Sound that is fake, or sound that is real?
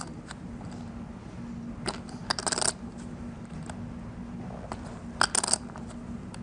real